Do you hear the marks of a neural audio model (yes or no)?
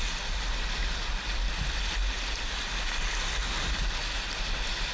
no